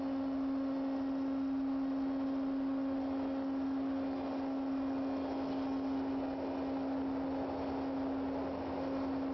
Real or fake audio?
real